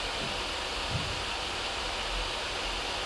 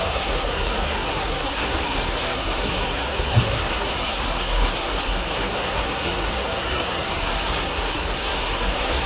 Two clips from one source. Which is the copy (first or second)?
second